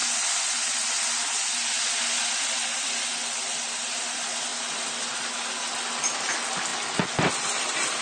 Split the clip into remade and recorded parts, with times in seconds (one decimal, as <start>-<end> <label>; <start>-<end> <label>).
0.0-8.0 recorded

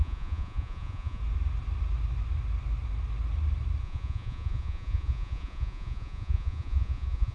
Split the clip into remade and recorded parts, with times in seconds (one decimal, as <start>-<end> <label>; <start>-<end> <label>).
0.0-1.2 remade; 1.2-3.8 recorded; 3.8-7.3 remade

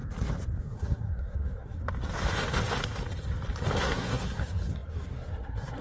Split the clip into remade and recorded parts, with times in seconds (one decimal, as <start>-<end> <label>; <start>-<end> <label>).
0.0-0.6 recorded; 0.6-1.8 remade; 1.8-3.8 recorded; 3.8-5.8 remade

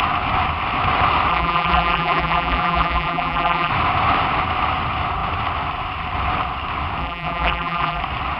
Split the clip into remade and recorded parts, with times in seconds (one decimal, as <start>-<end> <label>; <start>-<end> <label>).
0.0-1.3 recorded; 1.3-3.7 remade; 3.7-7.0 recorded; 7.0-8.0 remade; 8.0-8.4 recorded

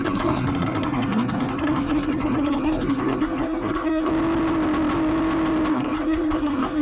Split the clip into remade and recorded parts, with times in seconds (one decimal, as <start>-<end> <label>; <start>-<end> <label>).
0.0-4.1 remade; 4.1-5.7 recorded; 5.7-6.8 remade

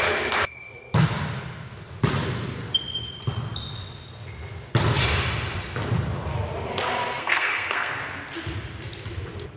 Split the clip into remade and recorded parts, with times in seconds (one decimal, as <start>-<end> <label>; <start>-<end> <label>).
0.0-7.2 recorded; 7.2-7.9 remade; 7.9-9.6 recorded

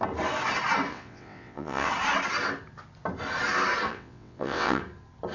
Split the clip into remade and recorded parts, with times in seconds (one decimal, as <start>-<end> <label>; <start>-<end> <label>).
0.0-0.9 recorded; 0.9-1.9 remade; 1.9-3.9 recorded; 3.9-4.8 remade; 4.8-5.3 recorded